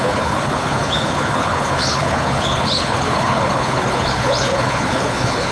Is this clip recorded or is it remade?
remade